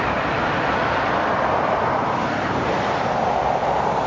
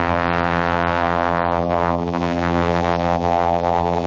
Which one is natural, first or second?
first